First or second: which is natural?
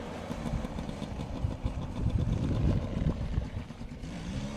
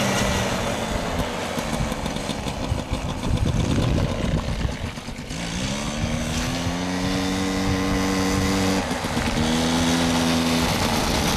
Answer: second